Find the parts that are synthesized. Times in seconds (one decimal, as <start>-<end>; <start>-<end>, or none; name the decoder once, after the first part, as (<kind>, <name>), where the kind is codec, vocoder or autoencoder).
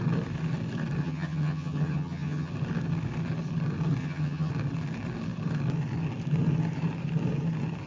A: 1.0-2.5 (vocoder, HiFi-GAN); 4.0-4.5